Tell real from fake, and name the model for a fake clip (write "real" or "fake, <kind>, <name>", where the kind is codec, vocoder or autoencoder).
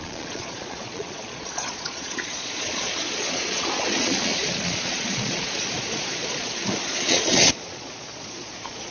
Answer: fake, vocoder, Vocos